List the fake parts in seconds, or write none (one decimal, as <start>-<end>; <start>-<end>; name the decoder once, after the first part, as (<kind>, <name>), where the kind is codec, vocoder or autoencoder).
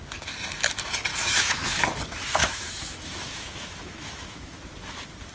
1.1-1.8 (autoencoder, DAC-VAE); 2.4-4.6